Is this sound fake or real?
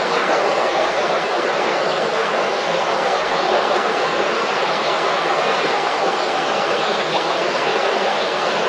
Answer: fake